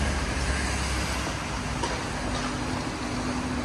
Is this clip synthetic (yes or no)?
no